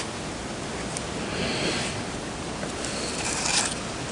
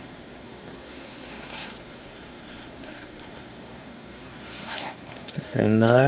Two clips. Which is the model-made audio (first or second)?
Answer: second